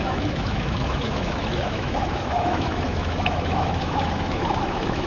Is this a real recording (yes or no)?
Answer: no